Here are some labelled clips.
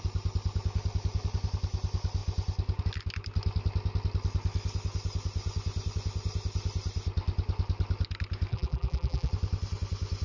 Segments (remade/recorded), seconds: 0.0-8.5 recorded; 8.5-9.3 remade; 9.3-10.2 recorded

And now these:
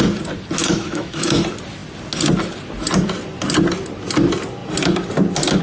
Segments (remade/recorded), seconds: 0.0-0.6 recorded; 0.6-1.4 remade; 1.4-5.6 recorded

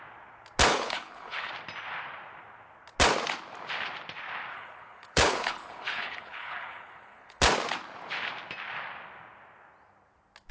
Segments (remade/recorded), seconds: 0.0-0.7 recorded; 0.7-1.5 remade; 1.5-4.5 recorded; 4.5-7.4 remade; 7.4-10.5 recorded

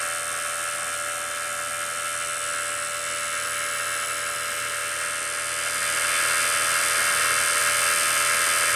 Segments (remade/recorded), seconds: 0.0-8.8 recorded

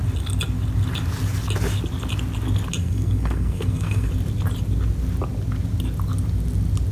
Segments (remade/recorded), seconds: 0.0-2.8 recorded; 2.8-4.1 remade; 4.1-6.9 recorded

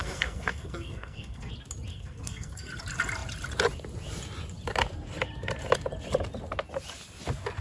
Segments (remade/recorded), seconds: 0.0-1.5 remade; 1.5-1.9 recorded; 1.9-2.7 remade; 2.7-7.6 recorded

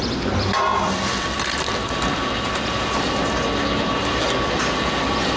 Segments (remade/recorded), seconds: 0.0-5.4 recorded

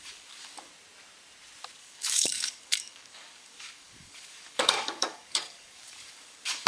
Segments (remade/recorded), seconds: 0.0-0.7 remade; 0.7-1.8 recorded; 1.8-6.7 remade